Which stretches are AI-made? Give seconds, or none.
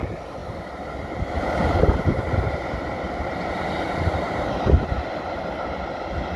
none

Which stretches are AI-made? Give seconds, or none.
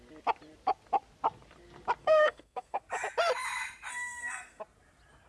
2.0-2.8 (codec, SNAC); 3.9-4.6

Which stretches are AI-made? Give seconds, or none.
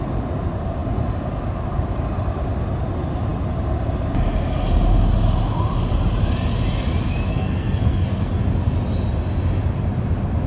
7.3-8.3 (codec, SNAC)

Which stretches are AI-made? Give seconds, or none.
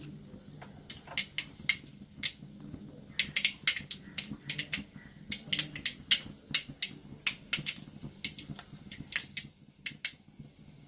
none